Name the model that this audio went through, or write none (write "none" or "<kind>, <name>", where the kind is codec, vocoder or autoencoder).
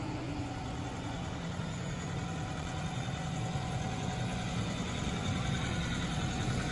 vocoder, Vocos